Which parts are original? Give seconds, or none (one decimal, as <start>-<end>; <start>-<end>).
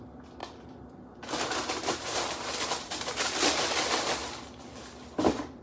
0.0-0.4; 3.7-4.2